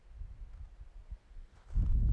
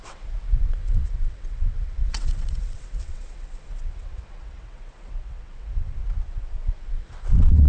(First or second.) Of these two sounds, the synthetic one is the second